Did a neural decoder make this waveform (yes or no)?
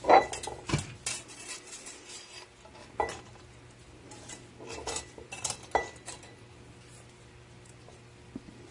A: no